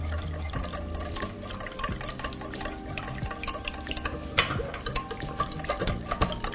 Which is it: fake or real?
real